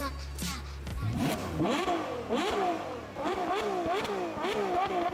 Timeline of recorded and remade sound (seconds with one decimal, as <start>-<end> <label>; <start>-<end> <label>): 0.0-0.9 recorded; 0.9-3.5 remade; 3.5-5.1 recorded